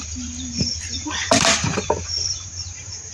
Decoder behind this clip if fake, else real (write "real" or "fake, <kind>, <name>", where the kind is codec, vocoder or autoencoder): fake, vocoder, BigVGAN v2